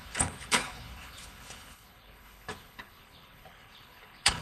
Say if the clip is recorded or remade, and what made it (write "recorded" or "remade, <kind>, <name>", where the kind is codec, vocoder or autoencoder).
remade, codec, HILCodec